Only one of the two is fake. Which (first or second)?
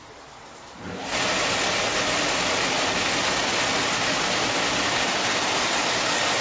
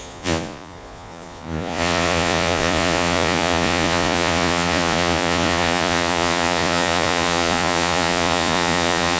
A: second